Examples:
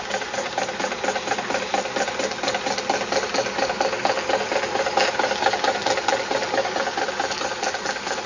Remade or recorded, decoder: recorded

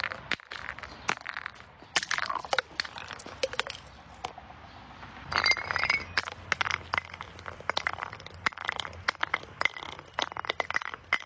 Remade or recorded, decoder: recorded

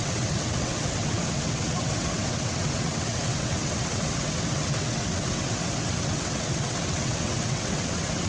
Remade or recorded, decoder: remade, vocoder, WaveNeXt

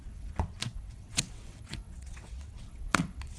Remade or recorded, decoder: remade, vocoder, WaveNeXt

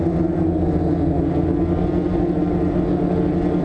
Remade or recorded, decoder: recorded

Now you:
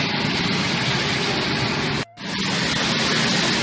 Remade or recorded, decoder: recorded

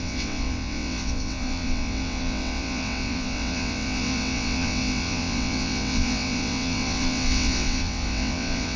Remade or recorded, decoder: remade, vocoder, WaveNeXt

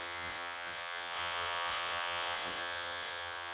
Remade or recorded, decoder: remade, vocoder, WaveNeXt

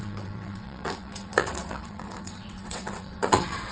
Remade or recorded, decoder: remade, vocoder, WaveNeXt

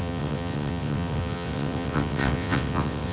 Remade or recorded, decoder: remade, vocoder, WaveNeXt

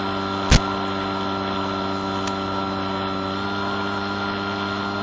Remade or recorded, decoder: recorded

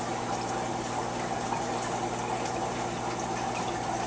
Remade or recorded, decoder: recorded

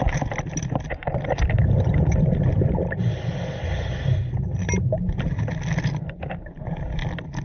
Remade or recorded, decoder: recorded